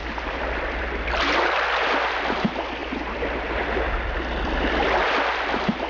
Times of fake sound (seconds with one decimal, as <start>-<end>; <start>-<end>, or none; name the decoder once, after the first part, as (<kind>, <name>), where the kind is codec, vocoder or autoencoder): none